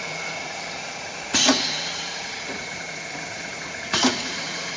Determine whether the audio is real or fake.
fake